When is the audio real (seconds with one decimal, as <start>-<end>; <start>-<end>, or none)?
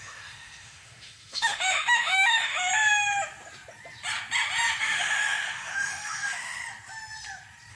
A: 2.7-4.8; 6.6-7.7